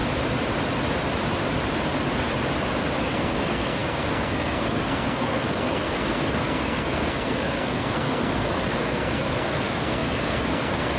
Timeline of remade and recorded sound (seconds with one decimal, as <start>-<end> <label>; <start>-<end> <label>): 0.0-3.0 recorded; 3.0-11.0 remade